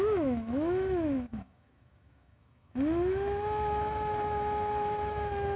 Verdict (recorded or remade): remade